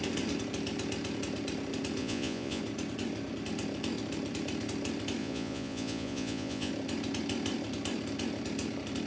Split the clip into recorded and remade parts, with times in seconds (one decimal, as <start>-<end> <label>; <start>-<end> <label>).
0.0-2.0 recorded; 2.0-2.6 remade; 2.6-5.2 recorded; 5.2-6.7 remade; 6.7-9.1 recorded